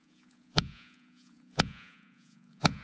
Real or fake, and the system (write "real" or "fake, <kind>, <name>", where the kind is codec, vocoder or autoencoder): fake, vocoder, Vocos